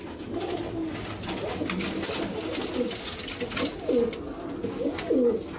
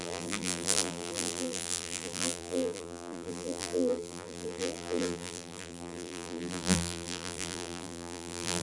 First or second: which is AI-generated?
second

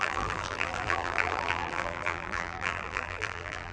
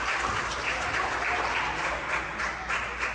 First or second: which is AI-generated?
first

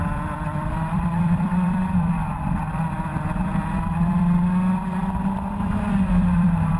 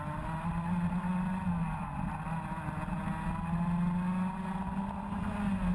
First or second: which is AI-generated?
first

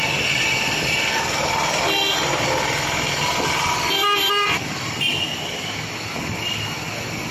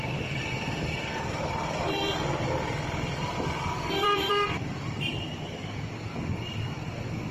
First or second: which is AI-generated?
second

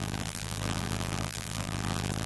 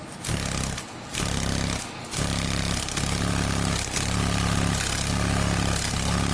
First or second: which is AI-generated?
first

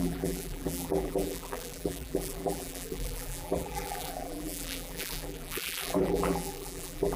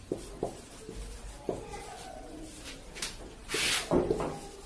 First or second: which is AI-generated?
first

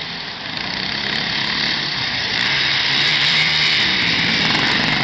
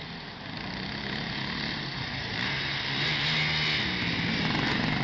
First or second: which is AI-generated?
first